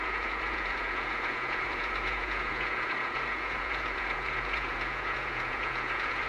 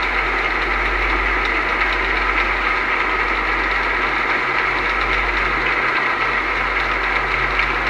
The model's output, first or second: first